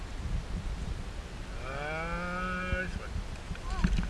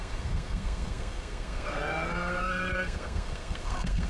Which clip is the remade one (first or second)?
second